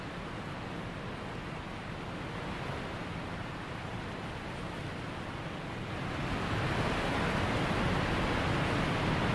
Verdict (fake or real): real